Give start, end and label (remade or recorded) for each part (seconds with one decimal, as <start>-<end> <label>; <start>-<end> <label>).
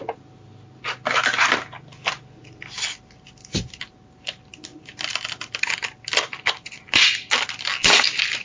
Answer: 0.0-8.4 recorded